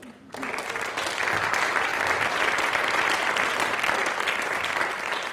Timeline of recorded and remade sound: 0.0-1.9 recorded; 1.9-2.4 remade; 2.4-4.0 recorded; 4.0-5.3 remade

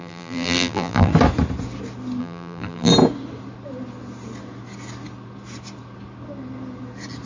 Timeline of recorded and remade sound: 0.0-1.1 remade; 1.1-2.2 recorded; 2.2-2.9 remade; 2.9-7.3 recorded

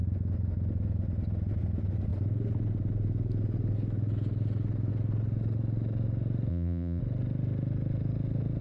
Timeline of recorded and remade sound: 0.0-6.5 recorded; 6.5-7.0 remade; 7.0-8.6 recorded

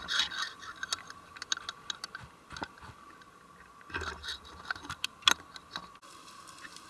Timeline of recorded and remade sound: 0.0-6.9 recorded

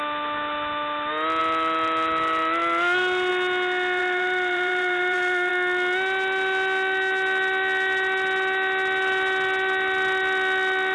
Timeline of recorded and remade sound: 0.0-4.0 recorded; 4.0-5.5 remade; 5.5-10.9 recorded

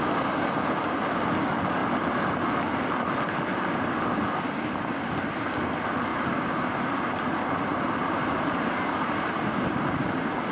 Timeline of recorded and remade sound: 0.0-6.1 recorded; 6.1-9.9 remade; 9.9-10.5 recorded